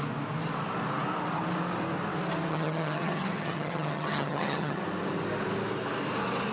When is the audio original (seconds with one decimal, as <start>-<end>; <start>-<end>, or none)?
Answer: 0.0-2.5; 4.8-6.5